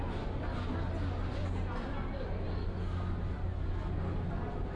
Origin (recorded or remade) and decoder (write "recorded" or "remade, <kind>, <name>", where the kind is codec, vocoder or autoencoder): recorded